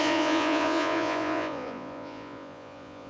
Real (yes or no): no